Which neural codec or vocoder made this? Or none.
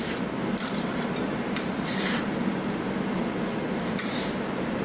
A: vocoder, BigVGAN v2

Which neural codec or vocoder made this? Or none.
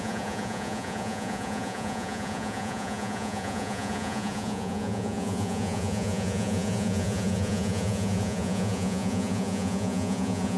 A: vocoder, Vocos